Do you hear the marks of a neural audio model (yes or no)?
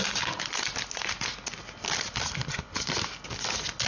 no